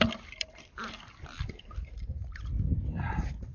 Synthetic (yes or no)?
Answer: no